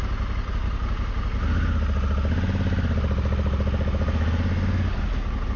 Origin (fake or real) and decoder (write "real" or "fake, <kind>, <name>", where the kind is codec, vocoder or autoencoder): real